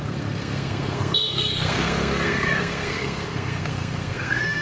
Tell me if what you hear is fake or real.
fake